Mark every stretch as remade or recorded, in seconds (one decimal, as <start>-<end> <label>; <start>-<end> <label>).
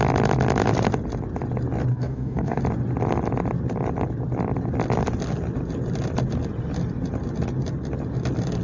0.0-1.9 recorded; 1.9-2.6 remade; 2.6-8.6 recorded